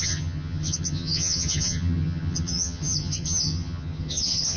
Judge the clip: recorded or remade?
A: remade